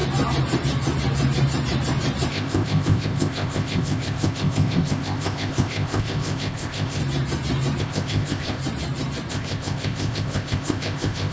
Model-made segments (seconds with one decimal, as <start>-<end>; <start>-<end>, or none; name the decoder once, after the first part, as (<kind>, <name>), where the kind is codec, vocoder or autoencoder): 2.3-7.0 (codec, ZipCodec); 7.8-8.6; 9.3-11.3